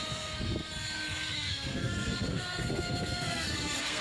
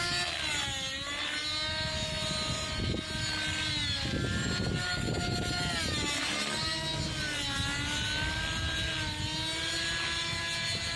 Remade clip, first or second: first